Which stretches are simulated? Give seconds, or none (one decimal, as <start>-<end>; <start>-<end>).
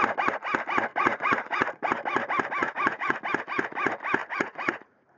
0.9-1.9; 2.6-3.2; 4.2-5.2